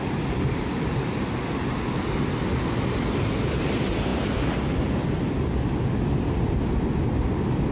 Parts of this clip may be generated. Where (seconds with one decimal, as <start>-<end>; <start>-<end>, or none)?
none